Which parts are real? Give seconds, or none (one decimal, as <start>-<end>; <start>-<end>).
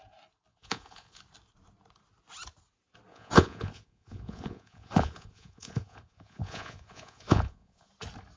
0.0-0.5; 1.2-3.1; 7.9-8.4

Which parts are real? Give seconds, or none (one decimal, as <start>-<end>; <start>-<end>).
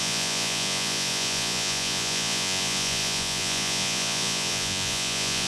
none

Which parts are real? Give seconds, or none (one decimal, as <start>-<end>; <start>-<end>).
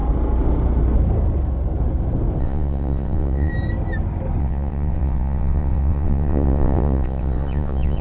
0.0-2.4; 3.5-4.4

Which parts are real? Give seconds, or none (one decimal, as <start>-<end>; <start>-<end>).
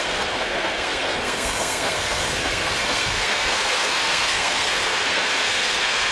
none